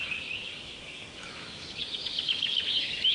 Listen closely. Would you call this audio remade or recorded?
remade